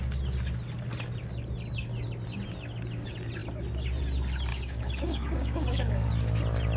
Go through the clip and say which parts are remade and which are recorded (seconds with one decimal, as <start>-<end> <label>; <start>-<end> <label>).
0.0-4.5 recorded; 4.5-6.1 remade; 6.1-6.8 recorded